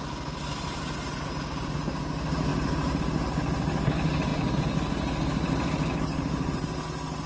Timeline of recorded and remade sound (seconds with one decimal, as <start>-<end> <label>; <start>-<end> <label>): 0.0-7.3 recorded

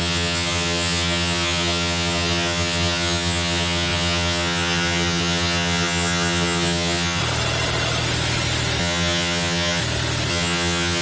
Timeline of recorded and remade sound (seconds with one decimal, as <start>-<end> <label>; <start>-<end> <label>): 0.0-7.2 remade; 7.2-8.8 recorded; 8.8-9.8 remade; 9.8-10.3 recorded; 10.3-11.0 remade

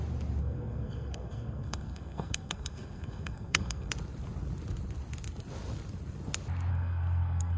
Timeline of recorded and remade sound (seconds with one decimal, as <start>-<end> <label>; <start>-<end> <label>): 0.0-0.4 recorded; 0.4-3.9 remade; 3.9-6.7 recorded; 6.7-7.6 remade

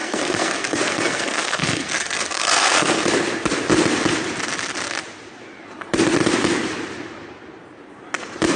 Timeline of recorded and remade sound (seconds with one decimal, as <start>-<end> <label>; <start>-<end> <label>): 0.0-3.0 remade; 3.0-8.6 recorded

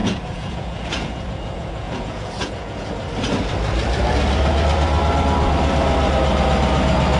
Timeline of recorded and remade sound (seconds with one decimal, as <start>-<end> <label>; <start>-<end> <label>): 0.0-2.9 remade; 2.9-7.2 recorded

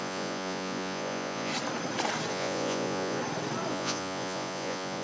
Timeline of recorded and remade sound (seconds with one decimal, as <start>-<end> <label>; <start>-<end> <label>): 0.0-1.5 remade; 1.5-2.3 recorded; 2.3-3.2 remade; 3.2-3.7 recorded; 3.7-5.0 remade